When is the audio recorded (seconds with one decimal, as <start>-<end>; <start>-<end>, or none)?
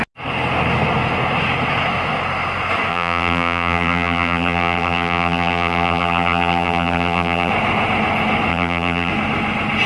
0.0-2.9; 7.5-8.5; 9.1-9.9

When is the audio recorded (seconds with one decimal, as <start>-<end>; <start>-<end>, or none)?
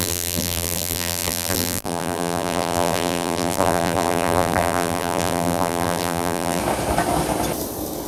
6.6-8.1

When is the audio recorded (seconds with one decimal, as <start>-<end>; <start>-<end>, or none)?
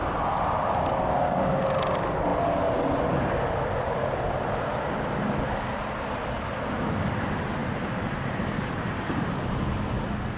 0.0-7.6; 9.7-10.4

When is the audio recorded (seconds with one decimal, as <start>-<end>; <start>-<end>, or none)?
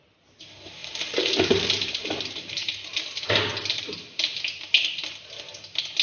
0.0-0.8; 4.4-6.0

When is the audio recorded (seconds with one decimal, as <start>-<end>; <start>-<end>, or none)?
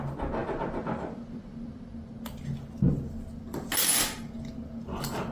0.0-0.4; 3.3-5.3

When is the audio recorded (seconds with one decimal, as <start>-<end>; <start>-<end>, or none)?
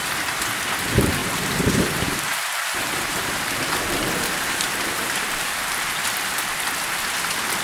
0.0-1.2; 5.8-7.6